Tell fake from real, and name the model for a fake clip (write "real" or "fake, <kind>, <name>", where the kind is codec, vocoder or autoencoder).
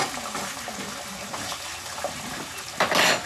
real